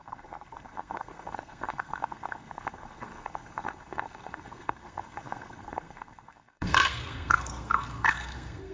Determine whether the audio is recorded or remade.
remade